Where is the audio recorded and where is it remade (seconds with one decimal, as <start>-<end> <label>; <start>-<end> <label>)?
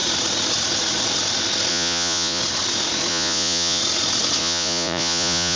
0.0-1.7 recorded; 1.7-2.4 remade; 2.4-3.1 recorded; 3.1-3.8 remade; 3.8-4.4 recorded; 4.4-5.6 remade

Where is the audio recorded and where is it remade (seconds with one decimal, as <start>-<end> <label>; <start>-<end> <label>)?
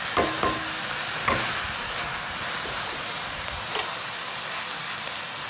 0.0-1.8 recorded; 1.8-3.8 remade; 3.8-5.5 recorded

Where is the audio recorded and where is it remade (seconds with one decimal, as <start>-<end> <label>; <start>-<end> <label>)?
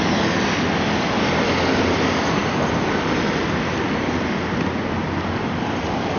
0.0-6.2 recorded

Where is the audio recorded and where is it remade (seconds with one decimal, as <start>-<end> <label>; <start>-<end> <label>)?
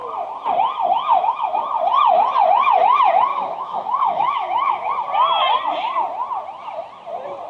0.0-3.3 recorded; 3.3-4.9 remade; 4.9-7.5 recorded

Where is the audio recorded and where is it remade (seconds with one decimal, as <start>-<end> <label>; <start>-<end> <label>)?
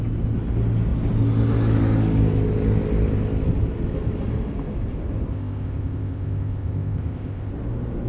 0.0-5.3 recorded; 5.3-7.5 remade; 7.5-8.1 recorded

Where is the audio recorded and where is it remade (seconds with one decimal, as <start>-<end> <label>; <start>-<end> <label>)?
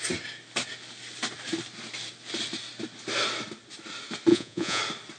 0.0-4.3 recorded; 4.3-4.8 remade; 4.8-5.2 recorded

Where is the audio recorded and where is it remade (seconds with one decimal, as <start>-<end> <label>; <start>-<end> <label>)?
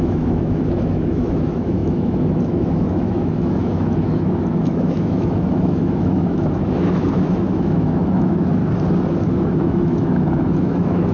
0.0-8.6 remade; 8.6-9.2 recorded; 9.2-11.1 remade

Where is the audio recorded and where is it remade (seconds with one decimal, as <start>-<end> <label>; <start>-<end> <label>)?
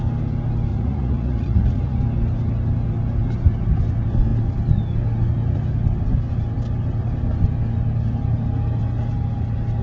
0.0-0.7 recorded; 0.7-2.0 remade; 2.0-9.8 recorded